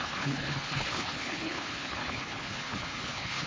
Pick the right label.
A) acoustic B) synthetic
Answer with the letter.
B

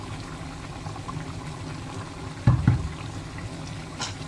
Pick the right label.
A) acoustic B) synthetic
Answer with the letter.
A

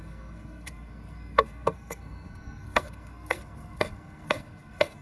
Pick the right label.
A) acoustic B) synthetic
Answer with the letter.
B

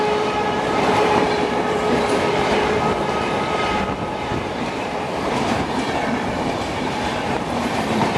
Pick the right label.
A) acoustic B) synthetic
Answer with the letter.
B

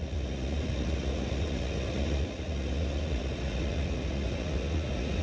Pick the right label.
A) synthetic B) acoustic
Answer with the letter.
A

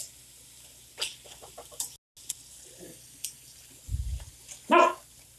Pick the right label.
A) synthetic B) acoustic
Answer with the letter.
B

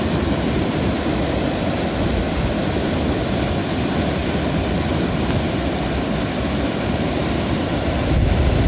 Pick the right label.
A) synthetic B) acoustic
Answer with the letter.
B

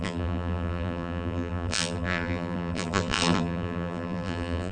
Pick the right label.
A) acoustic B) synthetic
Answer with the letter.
B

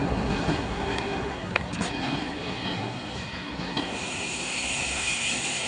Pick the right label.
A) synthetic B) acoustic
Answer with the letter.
A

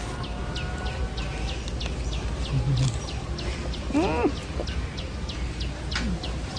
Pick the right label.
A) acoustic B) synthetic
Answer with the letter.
A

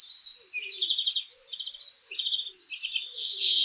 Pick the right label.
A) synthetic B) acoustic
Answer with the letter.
B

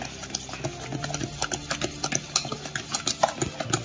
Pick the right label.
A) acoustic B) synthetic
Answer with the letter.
A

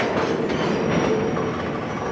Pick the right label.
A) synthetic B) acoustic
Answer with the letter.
B